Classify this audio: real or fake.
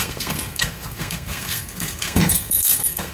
fake